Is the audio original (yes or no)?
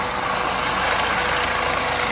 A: yes